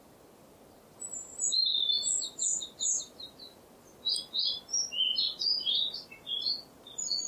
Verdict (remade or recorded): recorded